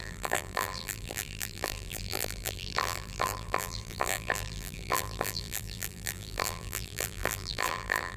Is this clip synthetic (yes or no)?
yes